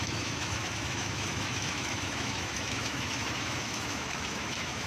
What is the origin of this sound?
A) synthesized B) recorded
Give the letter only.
A